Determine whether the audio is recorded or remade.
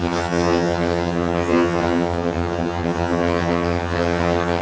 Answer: remade